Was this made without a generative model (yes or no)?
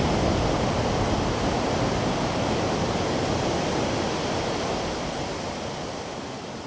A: yes